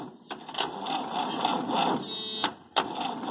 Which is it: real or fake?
real